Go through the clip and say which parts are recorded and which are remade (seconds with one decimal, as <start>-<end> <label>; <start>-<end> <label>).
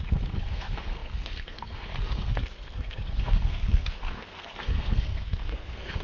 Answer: 0.0-6.0 remade